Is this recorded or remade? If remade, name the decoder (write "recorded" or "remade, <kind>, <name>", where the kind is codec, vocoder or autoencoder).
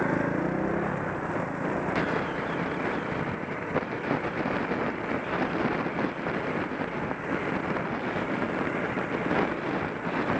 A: recorded